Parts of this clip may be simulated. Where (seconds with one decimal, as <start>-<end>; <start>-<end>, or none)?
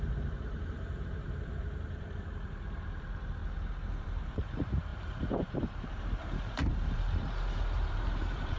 0.0-3.4; 3.9-8.6